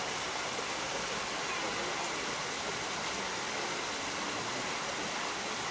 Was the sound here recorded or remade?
recorded